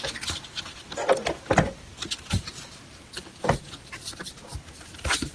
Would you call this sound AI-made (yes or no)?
yes